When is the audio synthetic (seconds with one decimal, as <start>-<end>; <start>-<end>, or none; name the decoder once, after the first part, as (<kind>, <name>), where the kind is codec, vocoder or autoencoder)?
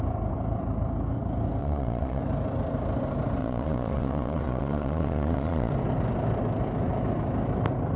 1.6-2.2 (vocoder, Vocos); 3.4-5.7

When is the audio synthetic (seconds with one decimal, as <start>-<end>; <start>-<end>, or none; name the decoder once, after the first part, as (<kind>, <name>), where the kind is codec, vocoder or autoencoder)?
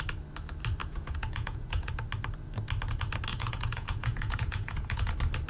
0.8-1.9 (vocoder, Vocos); 3.3-5.1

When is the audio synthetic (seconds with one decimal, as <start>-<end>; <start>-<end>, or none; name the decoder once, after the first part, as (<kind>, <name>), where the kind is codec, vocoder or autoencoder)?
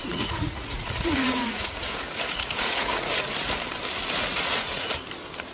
0.0-3.3 (vocoder, Vocos); 4.3-4.9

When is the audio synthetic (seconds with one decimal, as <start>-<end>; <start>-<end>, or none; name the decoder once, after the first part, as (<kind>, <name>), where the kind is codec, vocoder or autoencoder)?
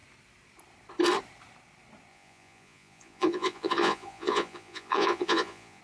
2.1-5.8 (vocoder, Vocos)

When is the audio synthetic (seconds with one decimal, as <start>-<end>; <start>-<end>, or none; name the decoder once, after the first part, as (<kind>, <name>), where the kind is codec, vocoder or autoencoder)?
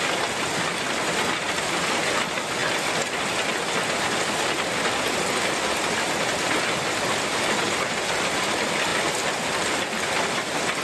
none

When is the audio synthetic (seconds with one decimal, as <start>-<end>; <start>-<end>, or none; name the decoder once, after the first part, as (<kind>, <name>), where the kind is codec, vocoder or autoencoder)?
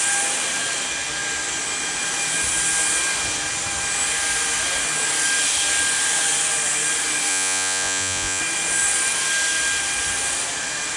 7.3-8.4 (vocoder, Vocos)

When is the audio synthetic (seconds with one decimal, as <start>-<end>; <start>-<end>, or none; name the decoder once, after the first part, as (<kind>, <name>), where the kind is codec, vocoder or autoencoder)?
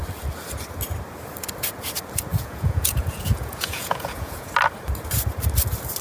2.3-4.5 (vocoder, Vocos)